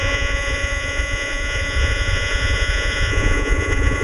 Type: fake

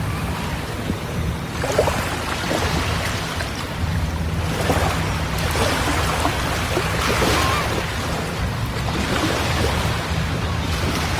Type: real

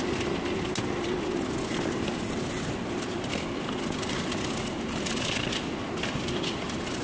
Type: real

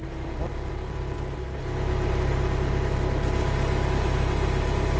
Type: real